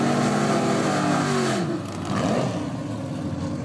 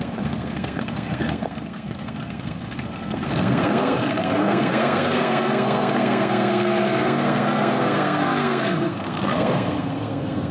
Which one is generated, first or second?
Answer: second